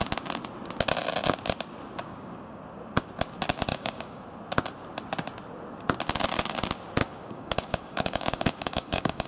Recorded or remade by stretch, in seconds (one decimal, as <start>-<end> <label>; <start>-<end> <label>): 0.0-2.1 recorded; 2.1-2.6 remade; 2.6-3.7 recorded; 3.7-4.2 remade; 4.2-7.0 recorded; 7.0-9.3 remade